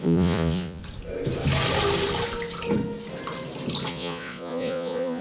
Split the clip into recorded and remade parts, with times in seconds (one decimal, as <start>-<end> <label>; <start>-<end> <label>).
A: 0.0-0.8 remade; 0.8-3.9 recorded; 3.9-5.2 remade

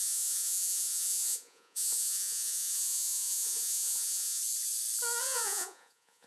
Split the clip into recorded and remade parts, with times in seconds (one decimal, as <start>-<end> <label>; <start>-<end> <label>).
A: 0.0-4.4 remade; 4.4-5.2 recorded; 5.2-6.3 remade

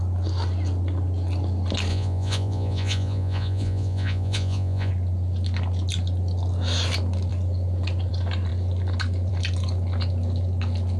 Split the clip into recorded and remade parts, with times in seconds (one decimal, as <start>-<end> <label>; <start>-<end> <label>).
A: 0.0-1.9 recorded; 1.9-4.9 remade; 4.9-11.0 recorded

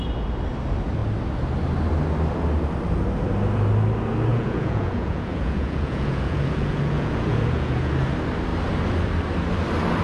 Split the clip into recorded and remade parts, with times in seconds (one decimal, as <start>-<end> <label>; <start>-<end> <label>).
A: 0.0-4.3 recorded; 4.3-7.9 remade; 7.9-10.0 recorded